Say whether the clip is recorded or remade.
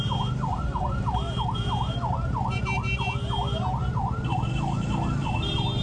recorded